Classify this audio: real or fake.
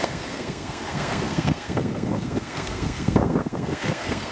fake